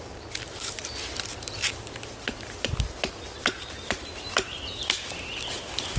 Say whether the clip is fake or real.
real